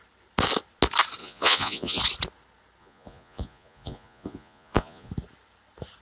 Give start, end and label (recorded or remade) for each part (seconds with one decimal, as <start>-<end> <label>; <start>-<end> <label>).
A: 0.0-1.2 recorded; 1.2-2.0 remade; 2.0-2.8 recorded; 2.8-5.1 remade; 5.1-6.0 recorded